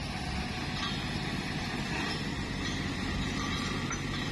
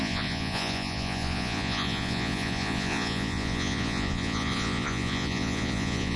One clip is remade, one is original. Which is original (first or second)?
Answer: first